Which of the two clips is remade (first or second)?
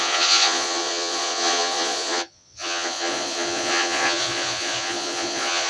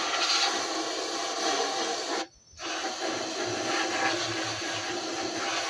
first